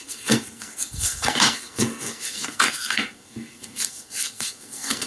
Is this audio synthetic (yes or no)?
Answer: yes